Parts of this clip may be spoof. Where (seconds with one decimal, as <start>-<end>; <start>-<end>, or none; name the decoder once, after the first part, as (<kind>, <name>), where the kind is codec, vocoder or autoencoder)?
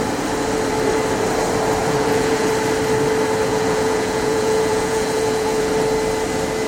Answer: 1.8-2.5 (vocoder, Vocos); 3.5-5.7